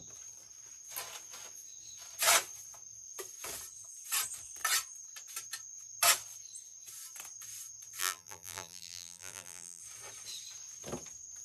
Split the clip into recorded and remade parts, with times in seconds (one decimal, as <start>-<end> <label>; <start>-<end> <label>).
0.0-8.0 recorded; 8.0-9.8 remade; 9.8-11.4 recorded